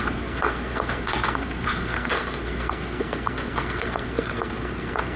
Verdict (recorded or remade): remade